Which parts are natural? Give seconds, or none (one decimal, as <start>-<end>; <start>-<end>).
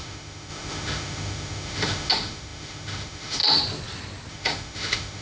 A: 3.4-4.3